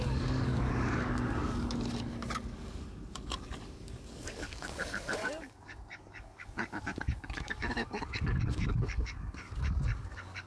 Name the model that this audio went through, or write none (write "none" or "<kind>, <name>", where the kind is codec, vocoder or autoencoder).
codec, DAC